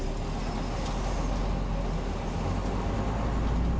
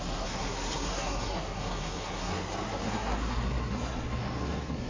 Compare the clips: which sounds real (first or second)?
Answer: first